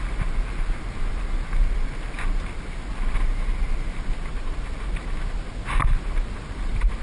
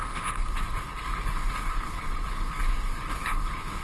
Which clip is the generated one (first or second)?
second